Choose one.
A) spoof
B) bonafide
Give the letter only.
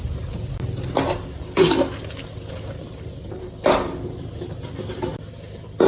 B